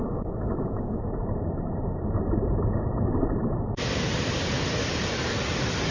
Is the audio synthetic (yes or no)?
yes